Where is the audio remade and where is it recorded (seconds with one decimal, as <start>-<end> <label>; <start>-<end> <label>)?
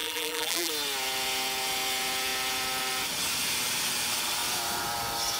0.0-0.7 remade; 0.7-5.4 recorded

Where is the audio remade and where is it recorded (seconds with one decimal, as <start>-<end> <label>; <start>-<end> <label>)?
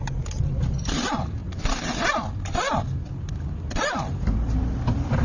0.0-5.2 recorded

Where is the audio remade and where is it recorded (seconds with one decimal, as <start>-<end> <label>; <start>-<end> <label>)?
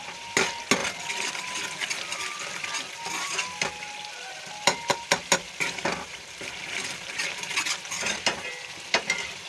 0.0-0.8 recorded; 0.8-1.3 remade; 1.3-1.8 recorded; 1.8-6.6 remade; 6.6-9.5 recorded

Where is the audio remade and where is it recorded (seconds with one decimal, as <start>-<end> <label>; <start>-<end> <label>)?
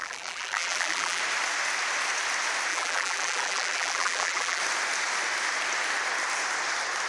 0.0-1.2 remade; 1.2-2.7 recorded; 2.7-4.6 remade; 4.6-7.1 recorded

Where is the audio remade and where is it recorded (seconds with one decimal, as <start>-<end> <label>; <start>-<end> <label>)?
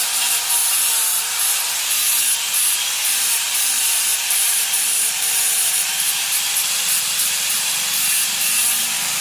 0.0-2.1 remade; 2.1-3.2 recorded; 3.2-9.2 remade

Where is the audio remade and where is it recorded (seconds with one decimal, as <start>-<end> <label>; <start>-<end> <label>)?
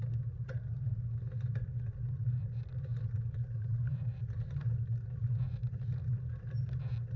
0.0-2.9 recorded; 2.9-4.2 remade; 4.2-7.2 recorded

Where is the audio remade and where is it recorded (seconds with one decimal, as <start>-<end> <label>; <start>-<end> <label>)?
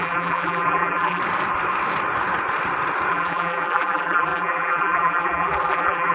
0.0-1.2 remade; 1.2-3.1 recorded; 3.1-6.1 remade